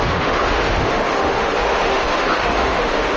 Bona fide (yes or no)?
no